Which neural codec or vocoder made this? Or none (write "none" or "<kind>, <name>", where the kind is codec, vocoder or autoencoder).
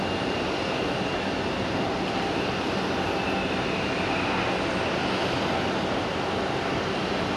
none